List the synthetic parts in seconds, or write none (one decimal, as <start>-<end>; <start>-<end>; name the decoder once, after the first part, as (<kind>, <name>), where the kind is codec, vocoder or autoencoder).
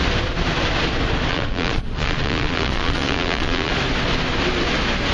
1.3-3.7 (vocoder, Vocos)